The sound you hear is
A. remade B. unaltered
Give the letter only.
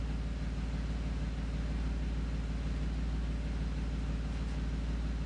B